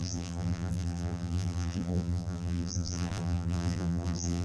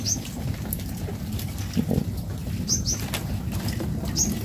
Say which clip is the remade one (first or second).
first